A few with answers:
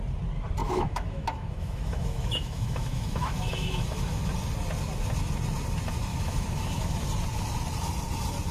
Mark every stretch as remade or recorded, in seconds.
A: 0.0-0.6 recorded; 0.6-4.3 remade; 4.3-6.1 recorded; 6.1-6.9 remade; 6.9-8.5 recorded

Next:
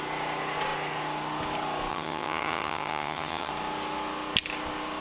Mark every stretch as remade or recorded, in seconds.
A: 0.0-1.9 recorded; 1.9-3.5 remade; 3.5-5.0 recorded

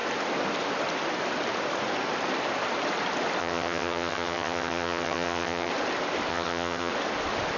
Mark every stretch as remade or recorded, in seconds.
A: 0.0-3.4 recorded; 3.4-5.7 remade; 5.7-6.3 recorded; 6.3-6.9 remade; 6.9-7.6 recorded

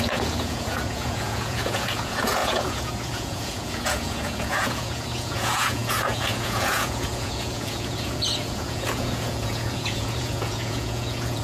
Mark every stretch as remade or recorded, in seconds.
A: 0.0-11.4 remade

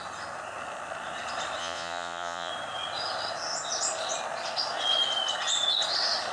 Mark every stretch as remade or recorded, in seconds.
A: 0.0-1.6 recorded; 1.6-2.5 remade; 2.5-6.3 recorded

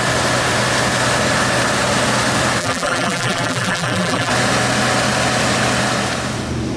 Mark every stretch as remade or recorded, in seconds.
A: 0.0-2.6 recorded; 2.6-4.3 remade; 4.3-6.8 recorded